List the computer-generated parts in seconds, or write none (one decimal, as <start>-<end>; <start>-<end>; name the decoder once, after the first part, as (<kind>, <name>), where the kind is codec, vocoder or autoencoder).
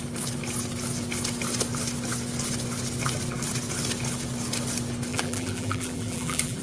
5.1-6.6 (vocoder, BigVGAN v2)